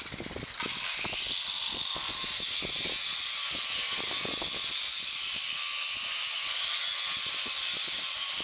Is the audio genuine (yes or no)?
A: yes